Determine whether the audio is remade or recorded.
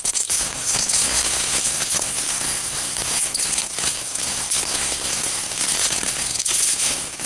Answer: remade